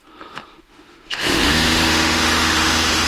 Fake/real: fake